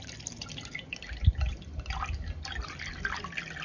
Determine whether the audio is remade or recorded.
recorded